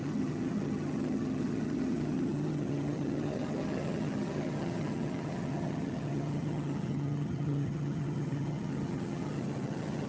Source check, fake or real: fake